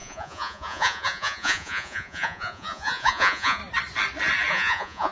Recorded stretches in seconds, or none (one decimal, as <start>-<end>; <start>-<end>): 3.6-4.5